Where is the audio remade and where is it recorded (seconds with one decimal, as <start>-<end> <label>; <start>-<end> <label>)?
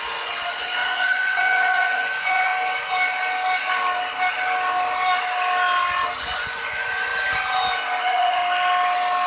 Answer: 0.0-2.5 remade; 2.5-6.2 recorded; 6.2-7.1 remade; 7.1-8.0 recorded; 8.0-8.4 remade; 8.4-9.3 recorded